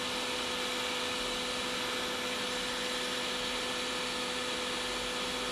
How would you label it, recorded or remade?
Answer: recorded